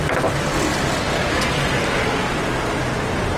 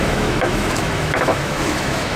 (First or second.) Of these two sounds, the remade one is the second